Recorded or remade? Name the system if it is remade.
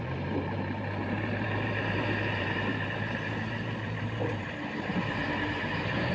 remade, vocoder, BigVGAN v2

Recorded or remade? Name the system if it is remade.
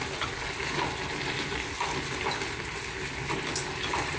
recorded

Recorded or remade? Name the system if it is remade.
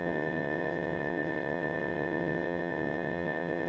remade, vocoder, WaveNeXt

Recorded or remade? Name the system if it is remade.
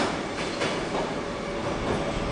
recorded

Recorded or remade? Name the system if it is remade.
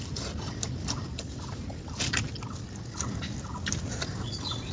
remade, vocoder, BigVGAN v2